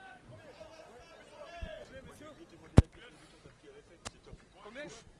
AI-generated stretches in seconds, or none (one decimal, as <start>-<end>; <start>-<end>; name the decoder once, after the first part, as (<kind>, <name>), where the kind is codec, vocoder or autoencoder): none